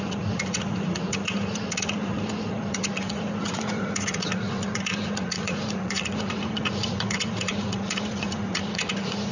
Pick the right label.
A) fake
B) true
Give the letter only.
A